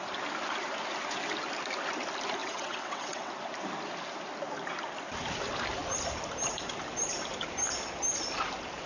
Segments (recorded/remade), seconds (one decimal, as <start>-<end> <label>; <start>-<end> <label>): 0.0-2.4 recorded; 2.4-3.3 remade; 3.3-8.9 recorded